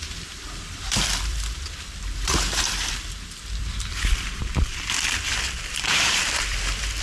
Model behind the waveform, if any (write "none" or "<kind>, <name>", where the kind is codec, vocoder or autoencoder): vocoder, BigVGAN v2